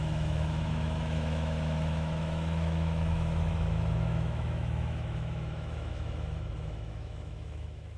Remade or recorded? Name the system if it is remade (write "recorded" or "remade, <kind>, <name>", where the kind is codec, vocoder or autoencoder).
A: remade, autoencoder, DAC-VAE